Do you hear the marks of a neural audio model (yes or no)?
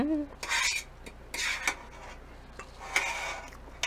no